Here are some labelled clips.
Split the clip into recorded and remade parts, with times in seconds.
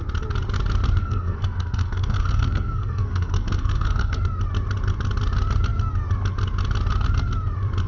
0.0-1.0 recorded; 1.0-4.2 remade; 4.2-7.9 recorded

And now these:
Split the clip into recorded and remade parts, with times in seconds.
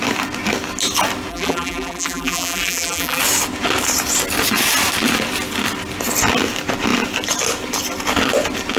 0.0-1.3 recorded; 1.3-3.2 remade; 3.2-8.8 recorded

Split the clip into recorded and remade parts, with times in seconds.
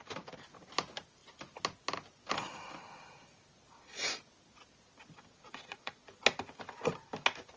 0.0-5.5 recorded; 5.5-6.2 remade; 6.2-7.6 recorded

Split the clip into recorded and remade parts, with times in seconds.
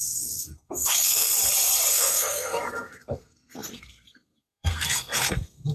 0.0-1.3 remade; 1.3-1.9 recorded; 1.9-5.7 remade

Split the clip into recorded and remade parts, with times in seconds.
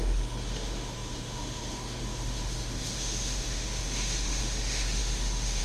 0.0-5.6 remade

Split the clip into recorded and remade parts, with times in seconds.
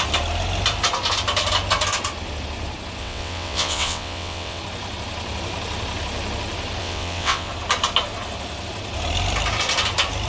0.0-3.0 recorded; 3.0-4.6 remade; 4.6-6.8 recorded; 6.8-7.5 remade; 7.5-10.3 recorded